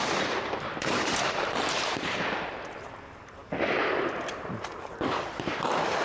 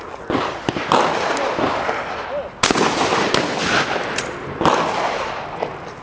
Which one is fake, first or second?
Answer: first